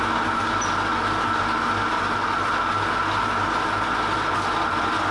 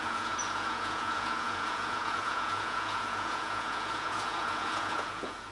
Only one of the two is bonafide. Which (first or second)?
first